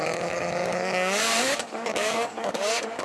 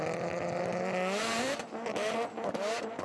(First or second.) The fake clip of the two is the first